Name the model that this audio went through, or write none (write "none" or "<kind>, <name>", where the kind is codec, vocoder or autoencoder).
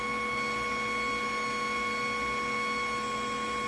none